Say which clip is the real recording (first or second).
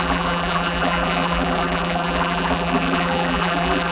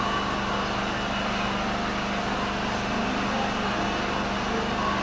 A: second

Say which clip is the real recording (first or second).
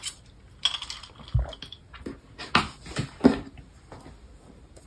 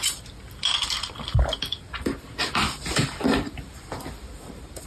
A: first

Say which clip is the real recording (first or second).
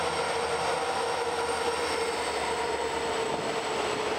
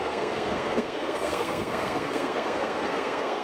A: first